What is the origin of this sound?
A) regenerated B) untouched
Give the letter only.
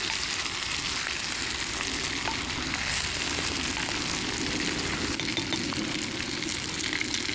B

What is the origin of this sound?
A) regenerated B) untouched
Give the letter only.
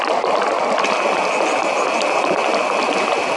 B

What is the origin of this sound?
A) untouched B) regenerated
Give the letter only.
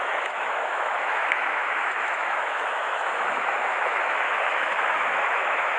B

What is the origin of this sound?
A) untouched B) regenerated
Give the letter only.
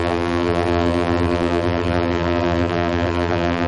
B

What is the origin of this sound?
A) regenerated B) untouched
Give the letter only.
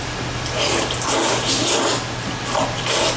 B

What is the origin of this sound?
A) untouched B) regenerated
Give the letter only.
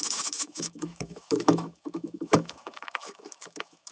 B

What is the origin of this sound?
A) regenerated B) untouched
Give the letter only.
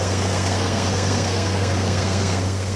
A